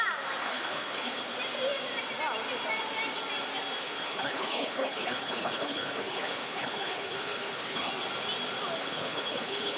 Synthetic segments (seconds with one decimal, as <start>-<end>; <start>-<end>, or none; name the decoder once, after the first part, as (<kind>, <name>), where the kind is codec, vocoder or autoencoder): 0.4-1.2 (codec, HILCodec); 3.8-7.9; 8.8-9.8